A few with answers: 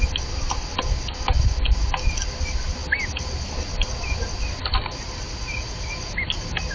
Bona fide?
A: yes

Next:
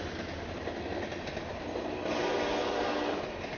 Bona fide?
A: yes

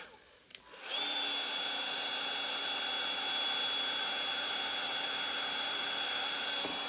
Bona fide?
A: yes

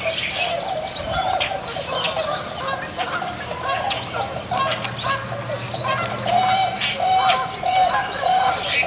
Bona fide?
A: yes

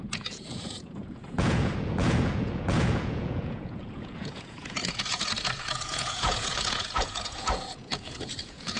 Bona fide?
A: no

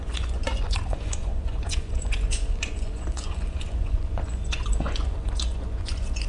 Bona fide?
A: no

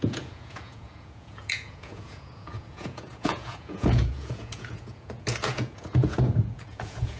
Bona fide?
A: no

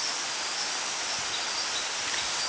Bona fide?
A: yes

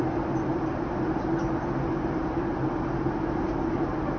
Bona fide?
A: yes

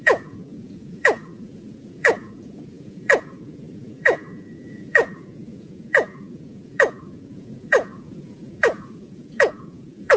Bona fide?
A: no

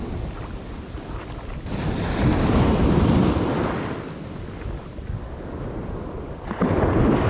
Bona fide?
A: yes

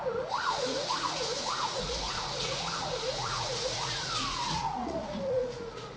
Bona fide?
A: no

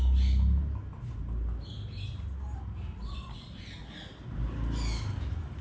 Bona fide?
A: yes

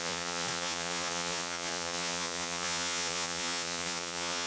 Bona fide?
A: no